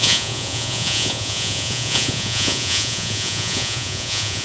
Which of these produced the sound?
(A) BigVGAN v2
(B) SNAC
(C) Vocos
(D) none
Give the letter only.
C